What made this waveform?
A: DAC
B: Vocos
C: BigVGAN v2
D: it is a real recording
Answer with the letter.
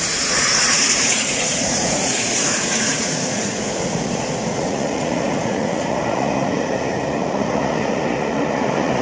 B